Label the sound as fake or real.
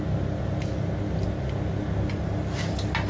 real